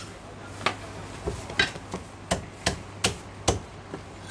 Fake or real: real